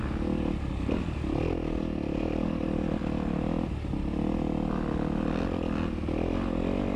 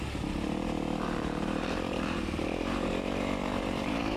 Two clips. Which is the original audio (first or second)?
first